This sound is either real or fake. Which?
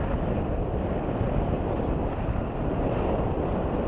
real